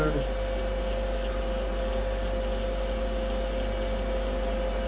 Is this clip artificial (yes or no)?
no